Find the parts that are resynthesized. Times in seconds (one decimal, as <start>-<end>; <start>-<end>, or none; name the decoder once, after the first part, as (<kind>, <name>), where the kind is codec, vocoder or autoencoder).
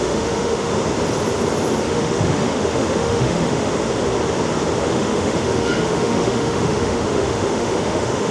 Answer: 0.0-0.7 (autoencoder, DAC-VAE); 1.8-3.7; 4.8-8.3